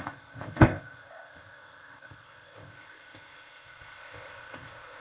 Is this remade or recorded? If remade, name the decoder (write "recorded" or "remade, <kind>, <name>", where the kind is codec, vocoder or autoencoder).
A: remade, codec, ZipCodec